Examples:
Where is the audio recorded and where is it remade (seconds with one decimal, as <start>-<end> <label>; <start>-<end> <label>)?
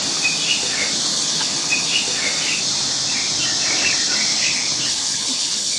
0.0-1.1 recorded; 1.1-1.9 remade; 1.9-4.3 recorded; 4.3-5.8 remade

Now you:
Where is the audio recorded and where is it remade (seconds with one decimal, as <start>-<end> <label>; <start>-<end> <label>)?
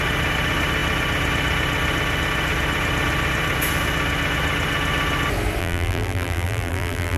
0.0-5.6 recorded; 5.6-7.2 remade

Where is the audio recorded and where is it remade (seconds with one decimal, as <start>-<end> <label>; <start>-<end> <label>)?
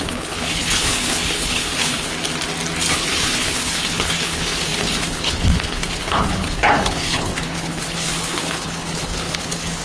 0.0-2.1 remade; 2.1-2.9 recorded; 2.9-9.8 remade